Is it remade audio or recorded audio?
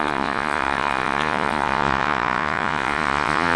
remade